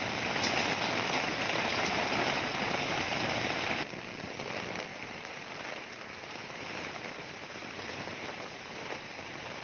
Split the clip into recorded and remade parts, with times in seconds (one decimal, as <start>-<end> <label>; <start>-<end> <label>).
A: 0.0-1.3 recorded; 1.3-3.0 remade; 3.0-4.9 recorded; 4.9-9.6 remade